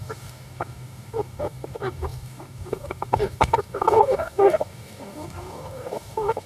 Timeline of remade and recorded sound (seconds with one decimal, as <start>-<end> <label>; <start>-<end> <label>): 0.0-6.5 remade